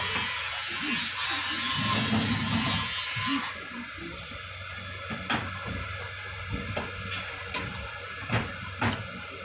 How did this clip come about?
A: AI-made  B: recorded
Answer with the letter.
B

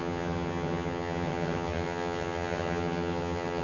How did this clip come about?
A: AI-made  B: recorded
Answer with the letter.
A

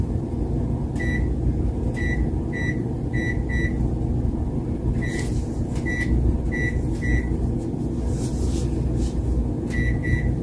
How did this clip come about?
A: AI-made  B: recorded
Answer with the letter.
B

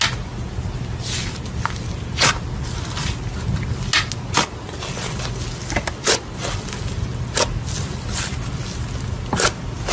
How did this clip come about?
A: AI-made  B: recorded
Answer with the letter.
B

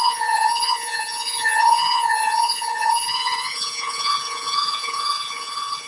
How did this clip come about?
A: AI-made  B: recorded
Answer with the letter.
A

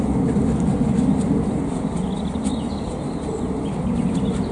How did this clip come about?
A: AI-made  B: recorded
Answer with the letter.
B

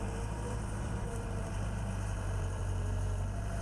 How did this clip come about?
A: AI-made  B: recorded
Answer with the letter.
A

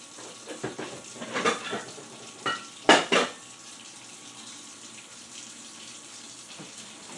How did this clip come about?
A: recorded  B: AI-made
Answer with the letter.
B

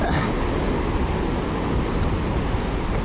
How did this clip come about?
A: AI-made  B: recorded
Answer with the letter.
B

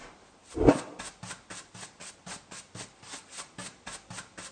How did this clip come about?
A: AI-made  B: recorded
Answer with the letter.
B